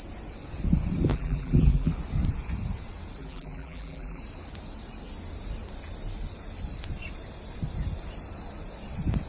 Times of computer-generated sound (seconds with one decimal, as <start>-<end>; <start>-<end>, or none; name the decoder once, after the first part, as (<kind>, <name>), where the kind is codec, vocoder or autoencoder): 1.1-1.9 (vocoder, BigVGAN v2); 3.2-4.2